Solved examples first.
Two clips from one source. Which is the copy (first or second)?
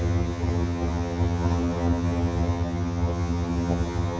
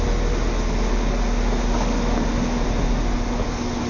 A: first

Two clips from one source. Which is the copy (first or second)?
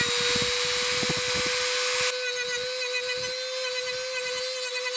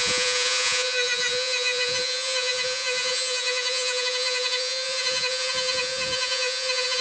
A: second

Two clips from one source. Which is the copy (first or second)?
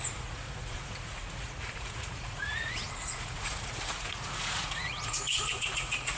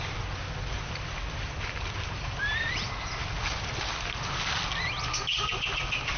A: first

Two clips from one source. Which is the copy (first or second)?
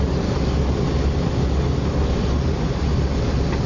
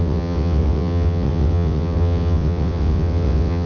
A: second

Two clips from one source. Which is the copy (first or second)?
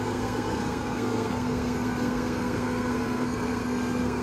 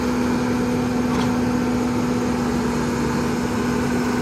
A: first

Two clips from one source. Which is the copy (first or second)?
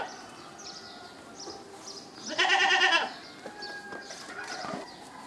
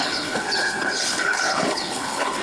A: second